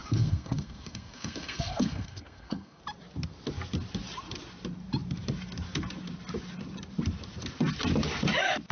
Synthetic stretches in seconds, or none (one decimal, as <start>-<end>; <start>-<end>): 0.0-2.8